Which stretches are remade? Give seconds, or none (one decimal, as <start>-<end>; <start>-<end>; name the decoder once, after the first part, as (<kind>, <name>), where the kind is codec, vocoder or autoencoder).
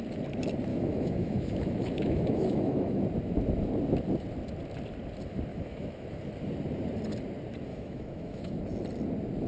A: 0.7-3.0 (autoencoder, DAC-VAE); 5.5-6.2; 7.7-8.6